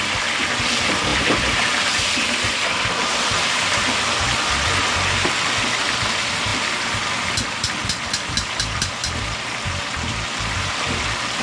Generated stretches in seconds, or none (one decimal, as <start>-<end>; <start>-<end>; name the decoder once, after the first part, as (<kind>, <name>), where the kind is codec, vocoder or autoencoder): 1.1-2.8 (vocoder, BigVGAN v2); 6.5-11.4

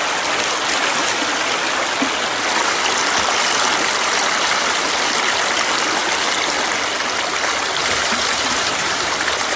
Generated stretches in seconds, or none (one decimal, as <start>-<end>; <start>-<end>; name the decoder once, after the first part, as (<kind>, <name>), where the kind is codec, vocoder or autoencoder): 7.8-9.1 (vocoder, BigVGAN v2)

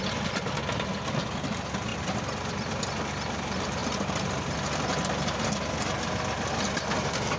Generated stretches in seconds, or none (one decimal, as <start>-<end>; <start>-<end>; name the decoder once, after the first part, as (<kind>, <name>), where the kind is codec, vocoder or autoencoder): none